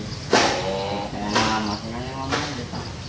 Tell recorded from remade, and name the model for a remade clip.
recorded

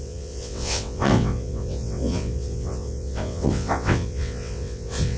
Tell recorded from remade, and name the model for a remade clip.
remade, vocoder, WaveNeXt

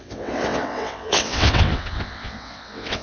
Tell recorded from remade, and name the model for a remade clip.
remade, vocoder, WaveNeXt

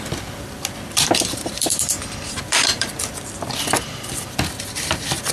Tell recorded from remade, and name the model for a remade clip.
remade, vocoder, BigVGAN v2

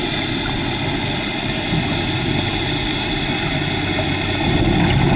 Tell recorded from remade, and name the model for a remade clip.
recorded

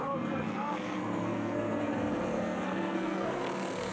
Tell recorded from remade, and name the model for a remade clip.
remade, codec, SNAC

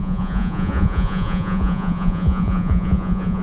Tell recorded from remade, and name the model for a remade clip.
remade, vocoder, Vocos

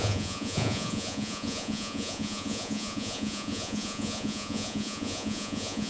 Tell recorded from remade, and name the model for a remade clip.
remade, vocoder, Vocos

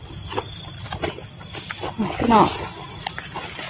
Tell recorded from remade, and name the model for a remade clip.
recorded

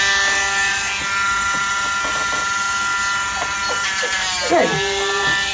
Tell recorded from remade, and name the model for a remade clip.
recorded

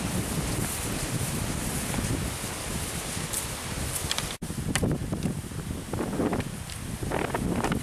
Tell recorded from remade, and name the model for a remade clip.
recorded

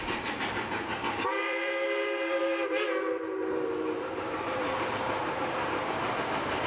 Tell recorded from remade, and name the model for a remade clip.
remade, vocoder, BigVGAN v2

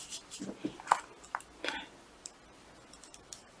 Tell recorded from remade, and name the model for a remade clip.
recorded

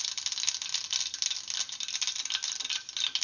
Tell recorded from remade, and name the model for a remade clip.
recorded